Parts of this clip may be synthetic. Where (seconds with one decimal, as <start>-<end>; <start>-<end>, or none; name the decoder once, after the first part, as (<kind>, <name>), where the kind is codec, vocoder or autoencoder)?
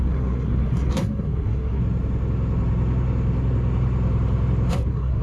0.0-1.8 (codec, SNAC); 4.7-5.2